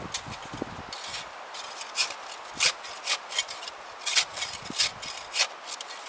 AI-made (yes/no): no